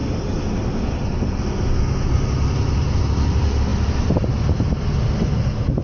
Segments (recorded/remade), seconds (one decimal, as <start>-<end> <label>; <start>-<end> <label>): 0.0-5.8 recorded